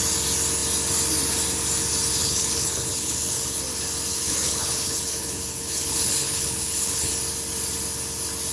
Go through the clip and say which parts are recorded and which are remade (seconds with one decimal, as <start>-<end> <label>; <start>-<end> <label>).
0.0-2.2 recorded; 2.2-3.6 remade; 3.6-4.1 recorded; 4.1-7.1 remade; 7.1-8.5 recorded